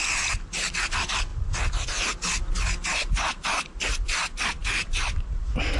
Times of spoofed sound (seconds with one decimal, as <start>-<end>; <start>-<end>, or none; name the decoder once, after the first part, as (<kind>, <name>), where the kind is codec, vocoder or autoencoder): none